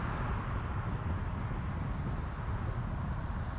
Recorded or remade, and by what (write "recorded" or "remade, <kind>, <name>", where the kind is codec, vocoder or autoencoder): recorded